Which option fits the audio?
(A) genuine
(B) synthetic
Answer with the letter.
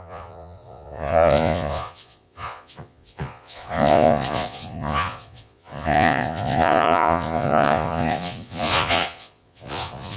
B